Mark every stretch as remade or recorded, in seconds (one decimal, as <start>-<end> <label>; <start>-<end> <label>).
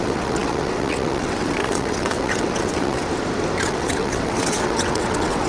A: 0.0-3.0 remade; 3.0-3.6 recorded; 3.6-5.5 remade